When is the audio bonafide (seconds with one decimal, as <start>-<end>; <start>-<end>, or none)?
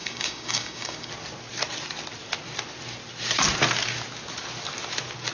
1.1-5.3